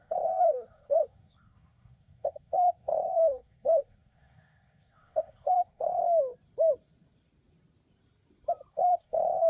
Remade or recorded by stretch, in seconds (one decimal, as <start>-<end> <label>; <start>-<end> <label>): 0.0-6.0 remade; 6.0-8.7 recorded; 8.7-9.5 remade